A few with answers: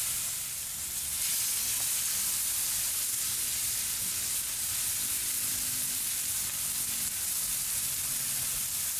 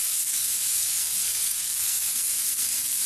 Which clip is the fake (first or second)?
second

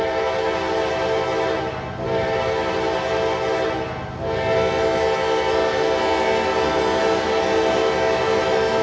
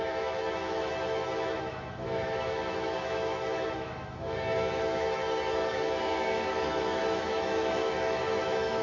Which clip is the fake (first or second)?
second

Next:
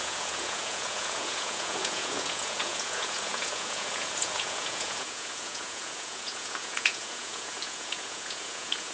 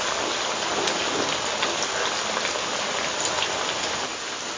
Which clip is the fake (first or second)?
first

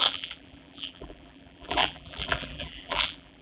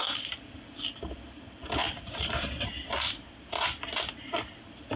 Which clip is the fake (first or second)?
first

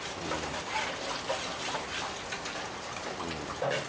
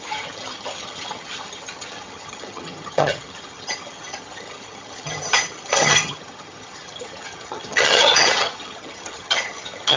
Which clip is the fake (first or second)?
second